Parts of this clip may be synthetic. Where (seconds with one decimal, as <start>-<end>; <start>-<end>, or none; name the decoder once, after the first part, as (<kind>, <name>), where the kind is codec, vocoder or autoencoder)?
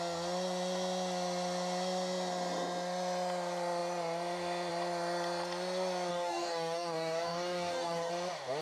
6.1-8.1 (codec, DAC)